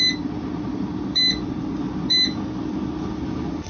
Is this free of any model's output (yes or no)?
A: yes